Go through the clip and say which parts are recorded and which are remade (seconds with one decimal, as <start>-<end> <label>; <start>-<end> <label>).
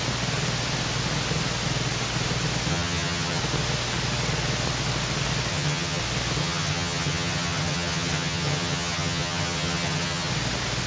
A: 0.0-2.7 recorded; 2.7-3.4 remade; 3.4-5.5 recorded; 5.5-6.0 remade; 6.0-6.4 recorded; 6.4-10.3 remade; 10.3-10.9 recorded